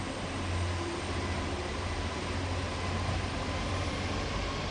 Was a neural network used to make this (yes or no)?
no